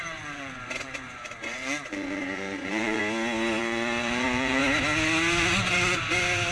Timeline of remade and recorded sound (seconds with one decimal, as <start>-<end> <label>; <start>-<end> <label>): 0.0-3.0 remade; 3.0-3.6 recorded; 3.6-4.6 remade; 4.6-6.5 recorded

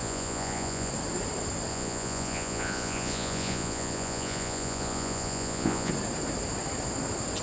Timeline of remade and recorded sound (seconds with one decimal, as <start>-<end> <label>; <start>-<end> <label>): 0.0-0.9 remade; 0.9-1.7 recorded; 1.7-5.9 remade; 5.9-7.4 recorded